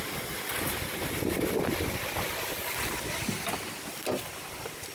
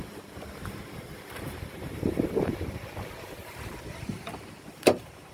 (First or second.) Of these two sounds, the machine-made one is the second